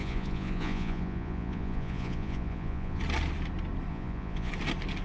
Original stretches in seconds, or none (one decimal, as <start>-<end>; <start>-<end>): 3.0-3.9; 4.5-5.0